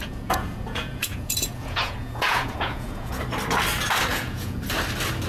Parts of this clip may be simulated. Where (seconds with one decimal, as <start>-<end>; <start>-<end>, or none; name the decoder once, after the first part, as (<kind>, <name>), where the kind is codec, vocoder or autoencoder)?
0.0-3.2 (vocoder, Vocos); 4.1-4.6